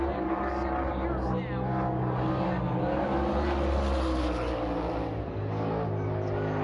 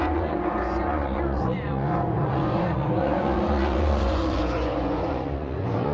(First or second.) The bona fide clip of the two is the first